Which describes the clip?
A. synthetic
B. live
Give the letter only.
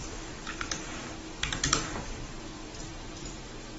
A